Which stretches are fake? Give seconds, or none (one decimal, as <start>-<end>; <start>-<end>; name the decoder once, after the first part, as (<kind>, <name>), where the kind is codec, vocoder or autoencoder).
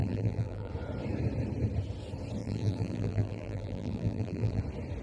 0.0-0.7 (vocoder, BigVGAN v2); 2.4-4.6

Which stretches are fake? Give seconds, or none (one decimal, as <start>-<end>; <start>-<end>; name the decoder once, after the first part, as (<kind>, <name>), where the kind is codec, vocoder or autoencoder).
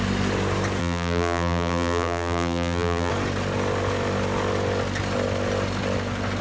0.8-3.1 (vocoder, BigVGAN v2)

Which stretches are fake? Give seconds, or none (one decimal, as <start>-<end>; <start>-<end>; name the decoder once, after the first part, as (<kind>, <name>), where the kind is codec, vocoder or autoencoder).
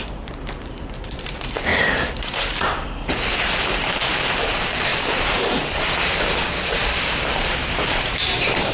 0.0-8.7 (vocoder, BigVGAN v2)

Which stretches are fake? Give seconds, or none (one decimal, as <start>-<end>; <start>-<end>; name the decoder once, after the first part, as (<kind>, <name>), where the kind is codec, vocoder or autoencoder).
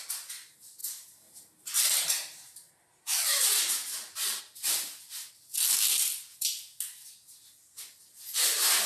0.8-4.4 (vocoder, BigVGAN v2)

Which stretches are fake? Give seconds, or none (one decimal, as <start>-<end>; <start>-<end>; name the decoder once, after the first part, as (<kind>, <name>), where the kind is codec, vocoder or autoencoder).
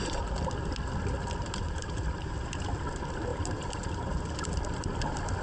1.4-2.5 (vocoder, BigVGAN v2); 3.3-4.2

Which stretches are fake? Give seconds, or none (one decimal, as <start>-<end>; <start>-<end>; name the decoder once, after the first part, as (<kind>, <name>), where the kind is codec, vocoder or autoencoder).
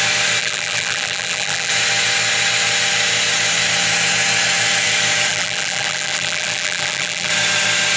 0.4-1.7 (vocoder, BigVGAN v2); 5.3-7.3